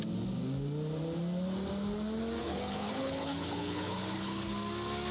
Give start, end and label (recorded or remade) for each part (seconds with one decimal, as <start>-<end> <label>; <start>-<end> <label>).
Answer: 0.0-2.4 recorded; 2.4-4.5 remade; 4.5-5.1 recorded